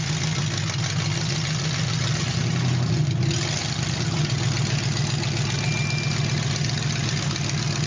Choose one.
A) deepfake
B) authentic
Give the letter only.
B